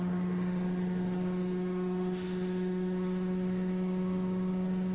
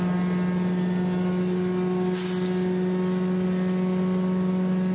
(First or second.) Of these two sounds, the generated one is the first